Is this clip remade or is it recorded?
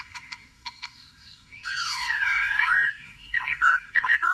remade